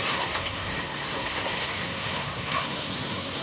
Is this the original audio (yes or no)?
no